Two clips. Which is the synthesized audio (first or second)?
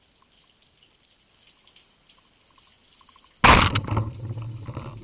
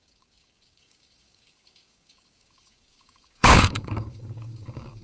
second